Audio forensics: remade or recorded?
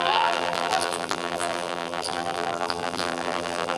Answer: remade